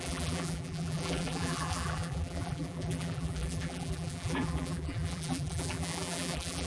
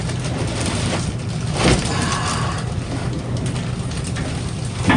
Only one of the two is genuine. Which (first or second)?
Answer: second